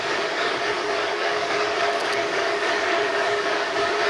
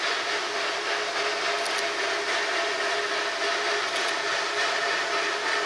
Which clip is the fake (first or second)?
first